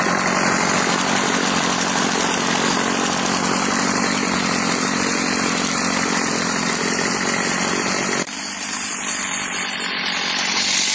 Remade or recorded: recorded